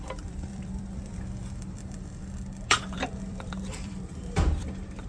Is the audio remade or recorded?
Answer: remade